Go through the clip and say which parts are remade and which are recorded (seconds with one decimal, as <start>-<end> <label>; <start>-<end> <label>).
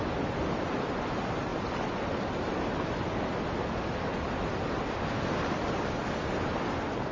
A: 0.0-7.1 recorded